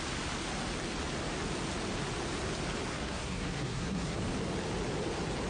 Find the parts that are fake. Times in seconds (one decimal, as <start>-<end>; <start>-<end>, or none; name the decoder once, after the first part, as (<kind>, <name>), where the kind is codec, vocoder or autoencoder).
2.9-4.2 (codec, SNAC)